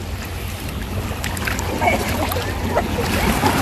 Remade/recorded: recorded